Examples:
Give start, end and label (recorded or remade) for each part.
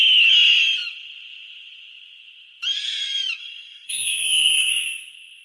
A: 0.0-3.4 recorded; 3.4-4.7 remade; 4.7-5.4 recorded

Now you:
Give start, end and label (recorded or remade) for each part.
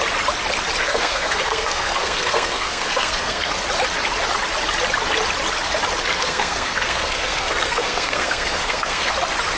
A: 0.0-0.8 recorded; 0.8-3.5 remade; 3.5-6.1 recorded; 6.1-9.1 remade; 9.1-9.6 recorded